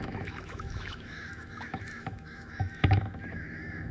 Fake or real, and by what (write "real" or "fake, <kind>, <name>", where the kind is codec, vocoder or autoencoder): fake, autoencoder, DAC-VAE